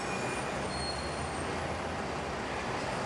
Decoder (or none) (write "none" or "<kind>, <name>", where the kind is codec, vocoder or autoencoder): none